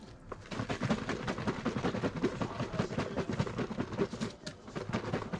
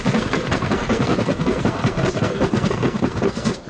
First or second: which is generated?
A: second